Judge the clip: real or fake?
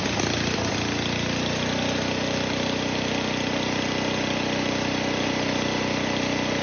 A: real